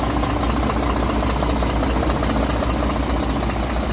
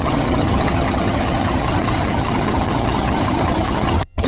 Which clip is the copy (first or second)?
second